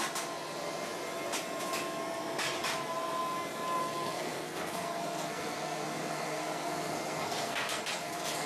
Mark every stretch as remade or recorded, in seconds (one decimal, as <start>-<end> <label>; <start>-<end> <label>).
0.0-3.8 recorded; 3.8-8.5 remade